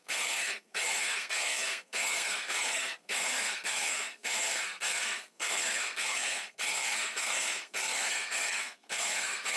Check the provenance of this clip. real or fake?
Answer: fake